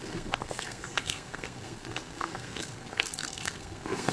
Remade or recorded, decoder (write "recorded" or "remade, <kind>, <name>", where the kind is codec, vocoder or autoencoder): remade, codec, SNAC